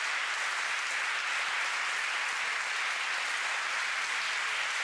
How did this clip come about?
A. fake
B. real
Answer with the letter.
B